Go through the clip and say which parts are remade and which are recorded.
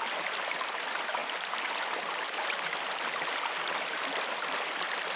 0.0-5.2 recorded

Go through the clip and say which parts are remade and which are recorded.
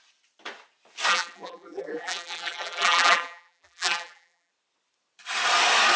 0.0-1.1 recorded; 1.1-4.5 remade; 4.5-6.0 recorded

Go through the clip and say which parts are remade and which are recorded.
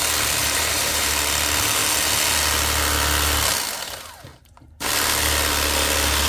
0.0-0.4 recorded; 0.4-1.1 remade; 1.1-4.3 recorded; 4.3-4.9 remade; 4.9-6.3 recorded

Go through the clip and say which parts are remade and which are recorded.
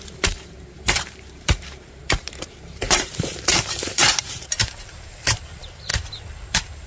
0.0-5.9 remade; 5.9-6.5 recorded; 6.5-6.9 remade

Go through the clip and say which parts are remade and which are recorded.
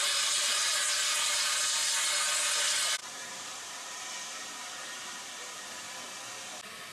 0.0-1.6 remade; 1.6-3.0 recorded; 3.0-5.6 remade; 5.6-6.9 recorded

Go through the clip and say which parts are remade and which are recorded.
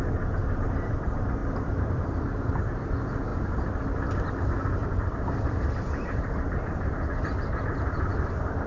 0.0-1.4 recorded; 1.4-2.4 remade; 2.4-4.8 recorded; 4.8-7.0 remade; 7.0-8.1 recorded; 8.1-8.7 remade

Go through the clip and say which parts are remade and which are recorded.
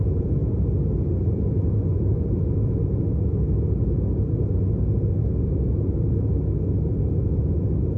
0.0-8.0 recorded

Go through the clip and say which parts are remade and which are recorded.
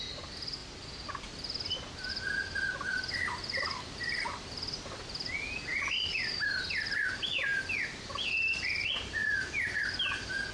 0.0-7.5 remade; 7.5-8.3 recorded; 8.3-10.5 remade